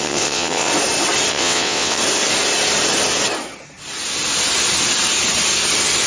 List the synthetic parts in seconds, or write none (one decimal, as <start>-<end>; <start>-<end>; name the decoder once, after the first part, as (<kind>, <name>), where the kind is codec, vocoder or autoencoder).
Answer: 0.0-0.7 (vocoder, WaveNeXt); 1.3-2.0